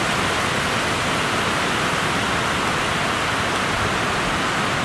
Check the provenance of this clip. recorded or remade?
recorded